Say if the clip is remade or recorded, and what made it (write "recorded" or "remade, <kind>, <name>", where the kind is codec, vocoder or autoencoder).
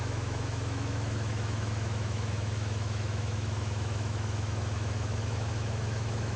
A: remade, autoencoder, DAC-VAE